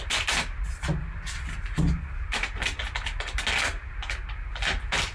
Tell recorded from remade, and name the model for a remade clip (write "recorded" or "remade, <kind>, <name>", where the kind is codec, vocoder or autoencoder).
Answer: recorded